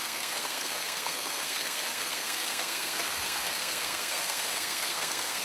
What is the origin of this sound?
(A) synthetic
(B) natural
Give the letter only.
A